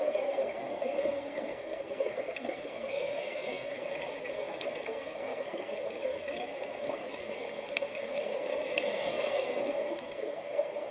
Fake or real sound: fake